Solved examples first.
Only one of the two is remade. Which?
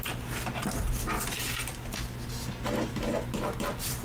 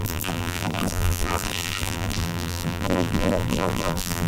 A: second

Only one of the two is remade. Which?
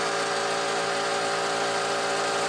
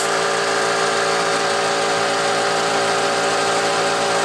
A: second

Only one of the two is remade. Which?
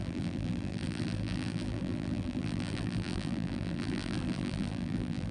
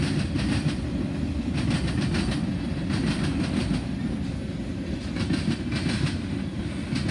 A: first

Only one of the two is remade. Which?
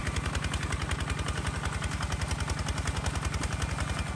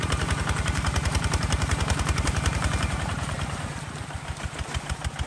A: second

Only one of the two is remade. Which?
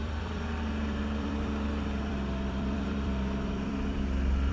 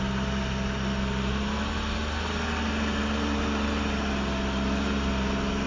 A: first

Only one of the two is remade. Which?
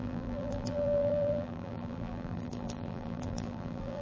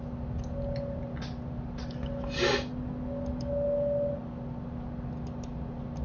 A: first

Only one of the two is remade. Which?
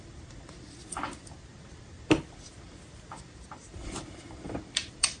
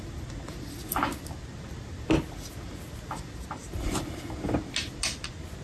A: first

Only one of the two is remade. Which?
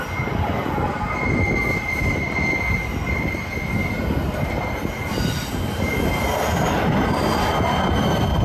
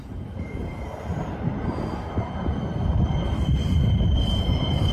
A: second